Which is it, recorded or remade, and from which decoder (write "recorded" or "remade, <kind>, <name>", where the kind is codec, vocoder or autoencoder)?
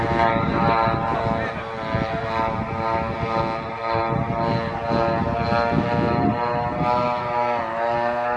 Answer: recorded